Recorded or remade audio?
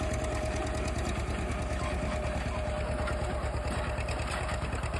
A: recorded